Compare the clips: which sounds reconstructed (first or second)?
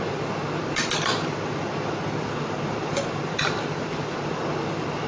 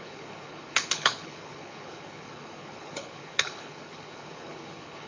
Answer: second